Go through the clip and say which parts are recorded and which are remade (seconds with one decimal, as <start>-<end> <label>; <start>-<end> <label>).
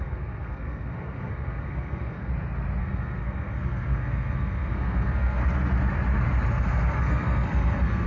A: 0.0-2.3 remade; 2.3-2.8 recorded; 2.8-5.4 remade; 5.4-6.6 recorded; 6.6-8.1 remade